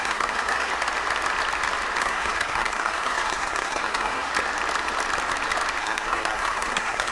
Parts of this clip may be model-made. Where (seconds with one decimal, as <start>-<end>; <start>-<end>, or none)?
0.0-0.7; 2.0-4.3; 5.8-7.1